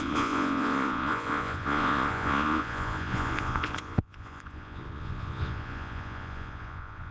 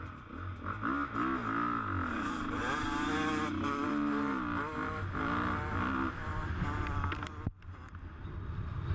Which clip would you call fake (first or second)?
first